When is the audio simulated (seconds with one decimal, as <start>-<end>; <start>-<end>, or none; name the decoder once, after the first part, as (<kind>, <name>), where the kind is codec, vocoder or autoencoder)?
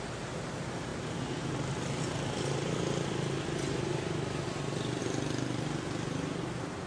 none